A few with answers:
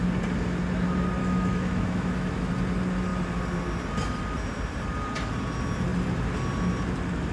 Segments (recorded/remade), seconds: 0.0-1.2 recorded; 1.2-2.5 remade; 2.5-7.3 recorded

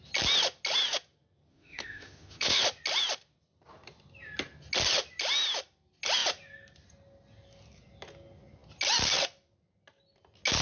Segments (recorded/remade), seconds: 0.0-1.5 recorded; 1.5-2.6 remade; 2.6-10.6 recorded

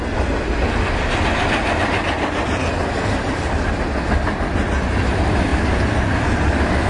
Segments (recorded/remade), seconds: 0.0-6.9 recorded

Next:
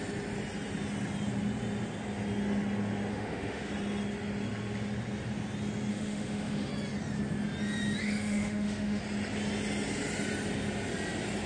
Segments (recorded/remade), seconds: 0.0-3.1 recorded; 3.1-3.7 remade; 3.7-5.9 recorded; 5.9-6.7 remade; 6.7-8.0 recorded; 8.0-9.0 remade; 9.0-11.5 recorded

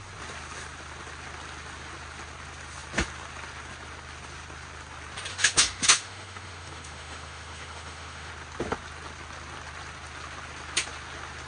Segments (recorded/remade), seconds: 0.0-5.3 recorded; 5.3-8.3 remade; 8.3-11.5 recorded

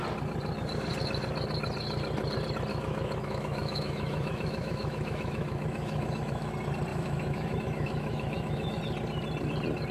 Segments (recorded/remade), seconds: 0.0-2.7 recorded; 2.7-6.5 remade; 6.5-6.9 recorded; 6.9-8.8 remade; 8.8-9.9 recorded